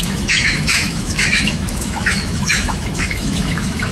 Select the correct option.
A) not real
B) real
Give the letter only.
A